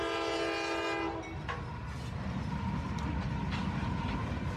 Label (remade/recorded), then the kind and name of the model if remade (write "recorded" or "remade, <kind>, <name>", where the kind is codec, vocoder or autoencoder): recorded